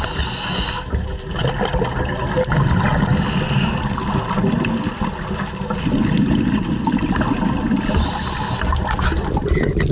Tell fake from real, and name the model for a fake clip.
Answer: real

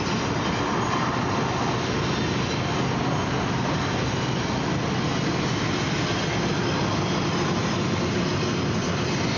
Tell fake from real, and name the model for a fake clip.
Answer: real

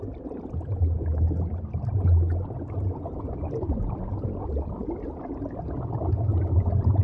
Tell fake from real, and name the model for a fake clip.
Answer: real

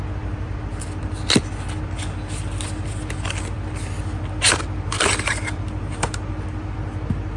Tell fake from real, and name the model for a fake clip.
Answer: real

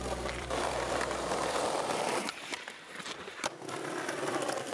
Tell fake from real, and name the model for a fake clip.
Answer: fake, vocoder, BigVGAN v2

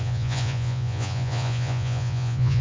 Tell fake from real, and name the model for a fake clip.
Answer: fake, vocoder, Vocos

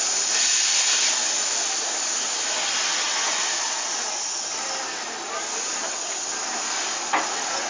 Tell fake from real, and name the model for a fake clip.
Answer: real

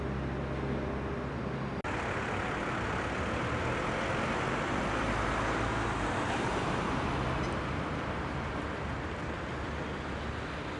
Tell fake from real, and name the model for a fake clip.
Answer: real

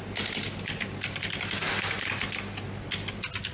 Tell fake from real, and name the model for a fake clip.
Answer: real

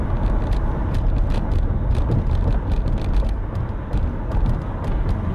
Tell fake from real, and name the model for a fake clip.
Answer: real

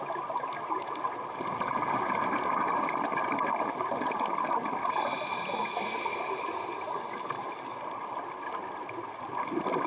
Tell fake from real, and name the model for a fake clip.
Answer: real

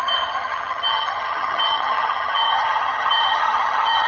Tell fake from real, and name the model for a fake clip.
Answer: fake, vocoder, HiFi-GAN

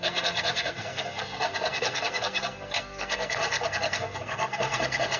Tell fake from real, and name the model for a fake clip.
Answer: fake, codec, SNAC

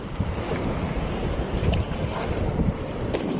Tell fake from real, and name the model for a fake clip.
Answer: real